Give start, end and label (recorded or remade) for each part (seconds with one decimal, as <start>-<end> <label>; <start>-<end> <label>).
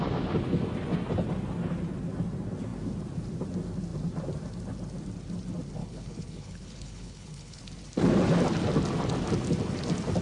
0.0-5.8 recorded; 5.8-7.6 remade; 7.6-10.2 recorded